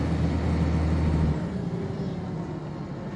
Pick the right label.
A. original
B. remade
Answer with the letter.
A